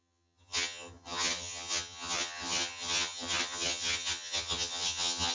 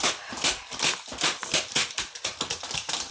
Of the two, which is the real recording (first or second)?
second